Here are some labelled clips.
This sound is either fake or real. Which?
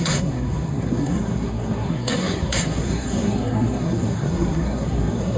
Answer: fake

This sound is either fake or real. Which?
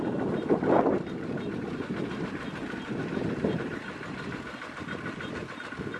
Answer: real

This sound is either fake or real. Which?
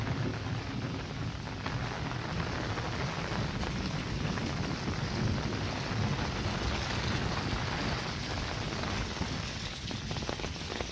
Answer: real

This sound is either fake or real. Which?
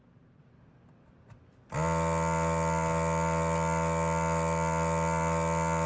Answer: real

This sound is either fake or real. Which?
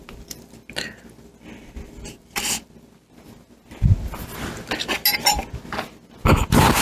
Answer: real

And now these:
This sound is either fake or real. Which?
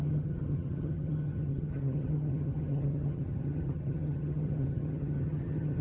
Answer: fake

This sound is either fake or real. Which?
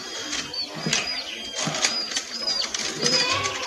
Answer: real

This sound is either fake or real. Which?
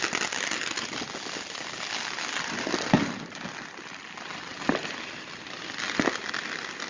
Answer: real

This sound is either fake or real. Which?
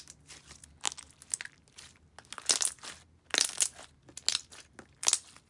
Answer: real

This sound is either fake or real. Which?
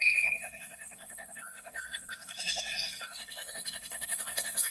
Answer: fake